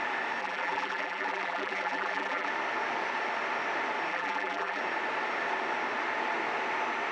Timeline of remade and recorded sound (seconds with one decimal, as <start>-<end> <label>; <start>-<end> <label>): 0.0-0.4 recorded; 0.4-2.5 remade; 2.5-4.1 recorded; 4.1-4.8 remade; 4.8-7.1 recorded